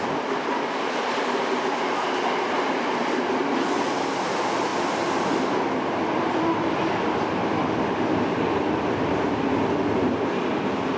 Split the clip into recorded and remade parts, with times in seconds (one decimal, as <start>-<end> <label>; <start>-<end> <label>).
0.0-11.0 recorded